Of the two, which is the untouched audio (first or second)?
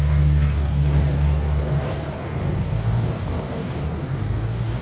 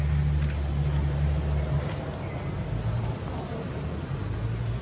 second